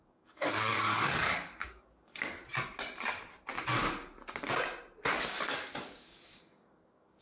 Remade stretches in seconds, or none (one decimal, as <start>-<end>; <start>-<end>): 0.0-2.4; 5.5-7.2